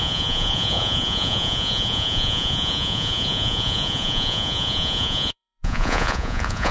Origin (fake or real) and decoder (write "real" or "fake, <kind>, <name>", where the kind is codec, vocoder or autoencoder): fake, vocoder, Vocos